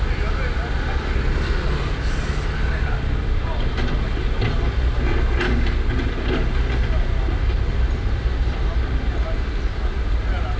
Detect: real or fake real